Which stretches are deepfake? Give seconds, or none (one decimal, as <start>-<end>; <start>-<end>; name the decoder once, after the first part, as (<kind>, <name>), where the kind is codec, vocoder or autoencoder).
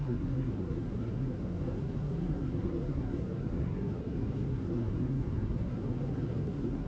0.0-6.9 (codec, SNAC)